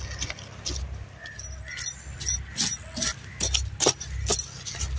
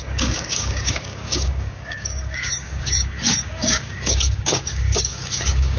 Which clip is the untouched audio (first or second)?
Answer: first